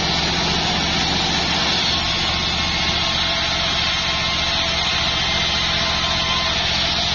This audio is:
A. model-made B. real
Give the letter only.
B